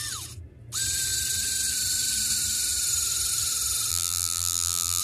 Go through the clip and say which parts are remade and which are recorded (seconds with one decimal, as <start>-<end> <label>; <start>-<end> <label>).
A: 0.0-3.9 recorded; 3.9-5.0 remade